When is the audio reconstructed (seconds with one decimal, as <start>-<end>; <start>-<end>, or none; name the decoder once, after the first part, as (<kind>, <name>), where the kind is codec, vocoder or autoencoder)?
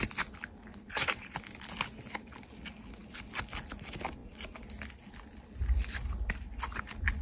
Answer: 0.7-1.4 (vocoder, BigVGAN v2)